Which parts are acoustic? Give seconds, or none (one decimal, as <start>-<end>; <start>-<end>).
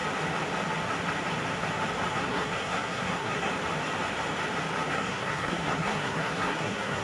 0.0-2.1; 3.5-4.9